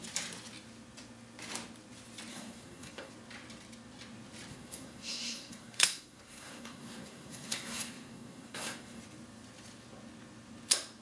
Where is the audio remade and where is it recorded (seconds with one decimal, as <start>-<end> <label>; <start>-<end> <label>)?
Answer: 0.0-2.3 recorded; 2.3-3.1 remade; 3.1-4.5 recorded; 4.5-9.0 remade; 9.0-11.0 recorded